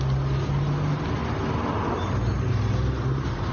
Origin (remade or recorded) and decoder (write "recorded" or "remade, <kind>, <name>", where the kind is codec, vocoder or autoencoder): recorded